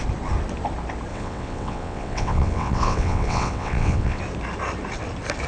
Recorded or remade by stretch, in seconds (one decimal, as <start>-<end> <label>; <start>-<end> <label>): 0.0-1.1 recorded; 1.1-4.2 remade; 4.2-5.5 recorded